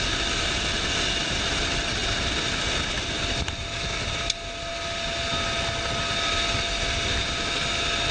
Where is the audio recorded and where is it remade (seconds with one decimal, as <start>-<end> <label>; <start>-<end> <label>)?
0.0-8.1 recorded